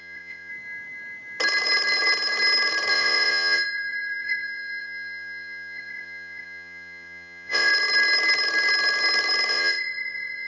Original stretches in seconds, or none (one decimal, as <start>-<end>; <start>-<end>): 0.5-2.9; 7.7-9.5

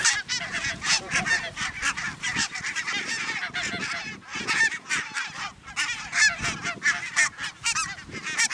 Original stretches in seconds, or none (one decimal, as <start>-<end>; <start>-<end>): 0.0-0.5; 1.0-4.3; 4.9-8.5

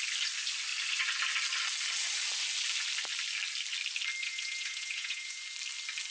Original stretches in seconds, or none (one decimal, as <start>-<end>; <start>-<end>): 0.0-4.2; 5.4-6.1